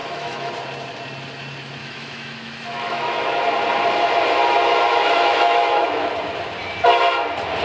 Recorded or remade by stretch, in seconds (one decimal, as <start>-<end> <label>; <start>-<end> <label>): 0.0-0.5 remade; 0.5-1.8 recorded; 1.8-3.4 remade; 3.4-4.9 recorded; 4.9-6.1 remade; 6.1-7.6 recorded